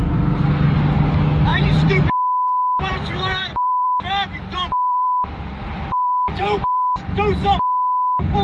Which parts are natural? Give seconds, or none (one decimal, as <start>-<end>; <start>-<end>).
0.0-1.5; 2.1-2.9; 7.0-8.4